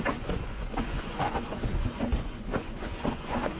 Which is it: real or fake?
fake